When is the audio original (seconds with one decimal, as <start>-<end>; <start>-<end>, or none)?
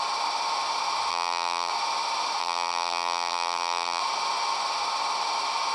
0.0-1.1; 1.7-2.4; 4.0-5.7